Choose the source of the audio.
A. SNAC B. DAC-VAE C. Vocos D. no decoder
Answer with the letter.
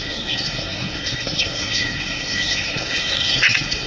A